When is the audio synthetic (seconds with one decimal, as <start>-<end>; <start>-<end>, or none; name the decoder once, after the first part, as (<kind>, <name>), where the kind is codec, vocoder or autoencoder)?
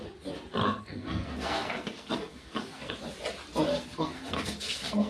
0.6-2.9 (codec, SNAC); 3.7-5.1